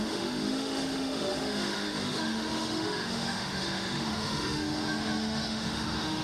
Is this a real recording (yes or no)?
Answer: no